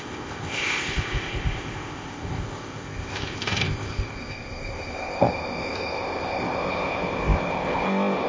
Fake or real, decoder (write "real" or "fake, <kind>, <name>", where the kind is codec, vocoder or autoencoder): fake, codec, ZipCodec